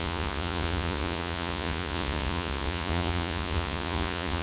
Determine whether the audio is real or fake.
fake